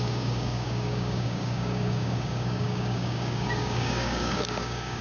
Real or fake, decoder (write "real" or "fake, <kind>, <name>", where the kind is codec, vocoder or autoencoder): fake, codec, DAC